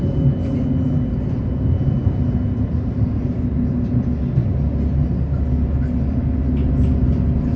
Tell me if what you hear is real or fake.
real